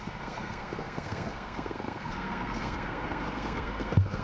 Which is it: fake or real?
fake